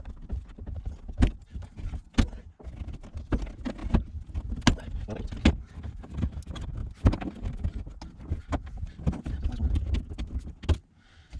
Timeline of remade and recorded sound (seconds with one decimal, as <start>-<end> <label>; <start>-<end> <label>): 0.0-11.4 recorded